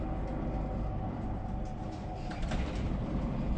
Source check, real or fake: real